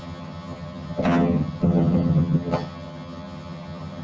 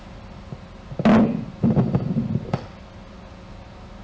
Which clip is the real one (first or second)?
second